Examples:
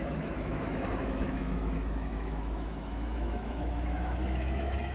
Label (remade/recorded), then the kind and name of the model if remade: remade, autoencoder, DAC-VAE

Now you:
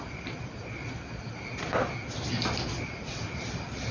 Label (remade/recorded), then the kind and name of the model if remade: recorded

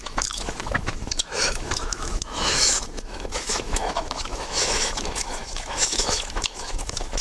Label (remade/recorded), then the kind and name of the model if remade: remade, autoencoder, DAC-VAE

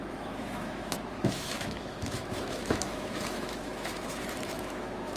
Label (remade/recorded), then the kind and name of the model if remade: remade, autoencoder, DAC-VAE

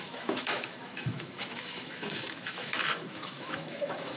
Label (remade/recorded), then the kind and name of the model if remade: remade, autoencoder, DAC-VAE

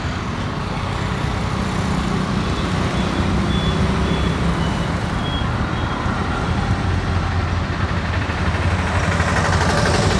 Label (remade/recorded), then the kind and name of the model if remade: recorded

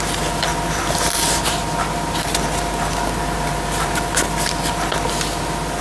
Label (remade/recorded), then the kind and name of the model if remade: recorded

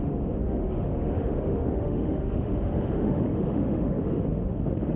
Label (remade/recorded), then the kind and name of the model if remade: remade, autoencoder, DAC-VAE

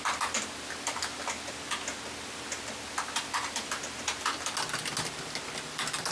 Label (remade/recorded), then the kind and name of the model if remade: recorded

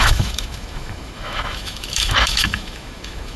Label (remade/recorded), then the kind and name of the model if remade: remade, autoencoder, DAC-VAE